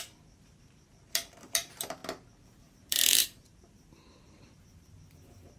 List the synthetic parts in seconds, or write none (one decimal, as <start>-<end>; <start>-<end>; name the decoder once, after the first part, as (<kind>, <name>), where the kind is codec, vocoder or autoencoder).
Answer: 0.0-2.0 (vocoder, BigVGAN v2); 2.7-5.6